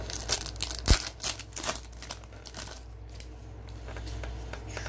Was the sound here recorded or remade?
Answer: recorded